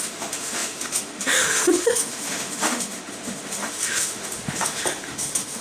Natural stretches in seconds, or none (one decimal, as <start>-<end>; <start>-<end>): none